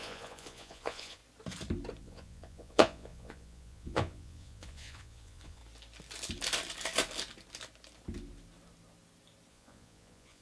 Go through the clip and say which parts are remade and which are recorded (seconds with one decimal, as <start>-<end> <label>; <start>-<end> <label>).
0.0-1.2 remade; 1.2-2.0 recorded; 2.0-5.6 remade; 5.6-9.5 recorded; 9.5-10.4 remade